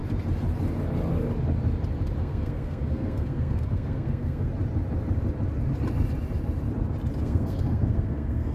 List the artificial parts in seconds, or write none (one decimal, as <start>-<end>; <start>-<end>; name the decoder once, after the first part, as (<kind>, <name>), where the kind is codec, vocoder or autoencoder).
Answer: 2.2-4.5 (codec, SNAC); 7.2-8.5